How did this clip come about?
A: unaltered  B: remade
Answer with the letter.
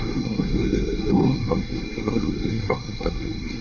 B